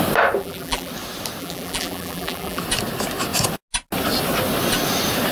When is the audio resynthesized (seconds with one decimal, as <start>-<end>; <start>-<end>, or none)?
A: 0.4-0.9; 1.4-2.6